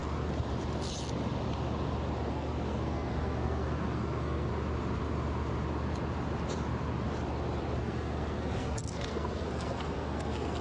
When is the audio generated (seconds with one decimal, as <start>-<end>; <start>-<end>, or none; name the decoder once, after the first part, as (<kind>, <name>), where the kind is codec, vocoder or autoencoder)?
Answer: 2.3-4.5 (codec, SNAC); 7.8-10.6